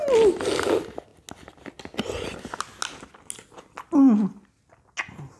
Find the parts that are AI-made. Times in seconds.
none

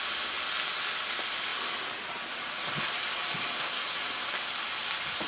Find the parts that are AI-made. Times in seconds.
none

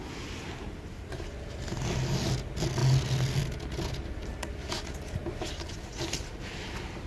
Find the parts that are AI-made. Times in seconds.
none

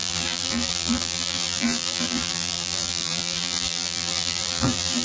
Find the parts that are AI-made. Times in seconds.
0.0-5.0

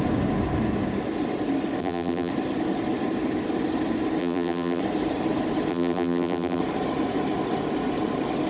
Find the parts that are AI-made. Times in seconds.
1.8-2.3; 4.2-4.8; 5.7-6.6

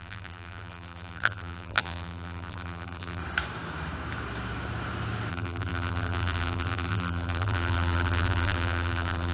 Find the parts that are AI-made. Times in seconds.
0.0-3.2; 5.3-9.3

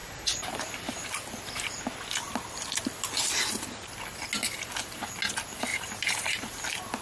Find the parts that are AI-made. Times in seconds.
0.0-1.1; 5.7-6.5